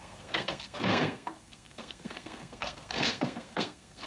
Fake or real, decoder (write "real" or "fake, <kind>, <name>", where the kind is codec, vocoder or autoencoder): fake, codec, SNAC